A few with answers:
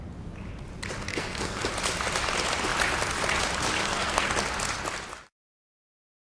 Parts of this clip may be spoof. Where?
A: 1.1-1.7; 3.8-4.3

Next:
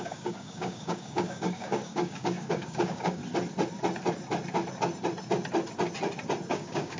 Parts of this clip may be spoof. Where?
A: 0.0-3.2; 6.5-7.0